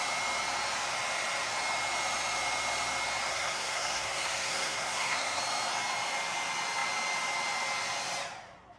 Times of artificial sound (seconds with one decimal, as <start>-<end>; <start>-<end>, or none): 3.3-5.4